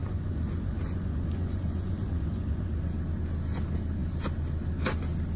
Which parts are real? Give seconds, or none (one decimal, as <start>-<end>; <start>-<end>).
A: 2.8-5.4